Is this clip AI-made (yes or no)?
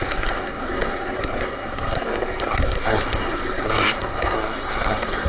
yes